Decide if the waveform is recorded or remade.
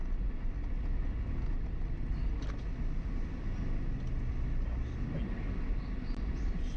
recorded